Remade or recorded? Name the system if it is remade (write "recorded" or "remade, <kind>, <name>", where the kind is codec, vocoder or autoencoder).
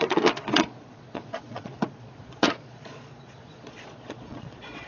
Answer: remade, vocoder, Vocos